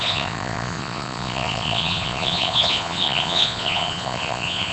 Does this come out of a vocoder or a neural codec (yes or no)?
yes